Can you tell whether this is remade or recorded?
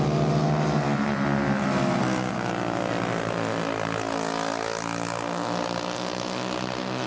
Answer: recorded